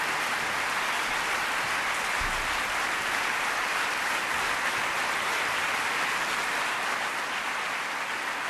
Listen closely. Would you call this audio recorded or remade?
recorded